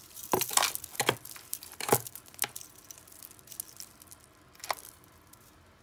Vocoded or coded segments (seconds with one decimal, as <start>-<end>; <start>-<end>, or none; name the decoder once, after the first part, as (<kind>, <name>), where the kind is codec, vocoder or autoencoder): 1.5-2.3 (vocoder, BigVGAN v2)